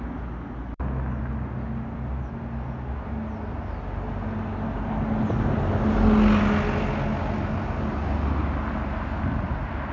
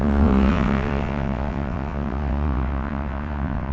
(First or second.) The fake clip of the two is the second